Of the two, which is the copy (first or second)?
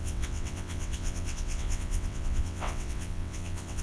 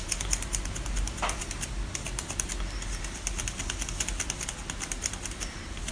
first